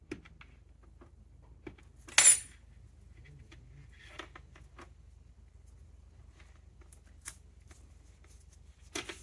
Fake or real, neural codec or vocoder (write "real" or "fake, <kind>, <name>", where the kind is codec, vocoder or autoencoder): real